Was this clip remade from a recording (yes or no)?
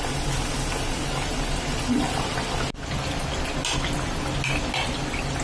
no